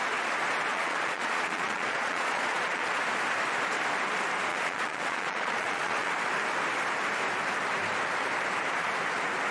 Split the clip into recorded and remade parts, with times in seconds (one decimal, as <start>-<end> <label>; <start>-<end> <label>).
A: 0.0-0.7 recorded; 0.7-3.0 remade; 3.0-4.5 recorded; 4.5-6.1 remade; 6.1-9.5 recorded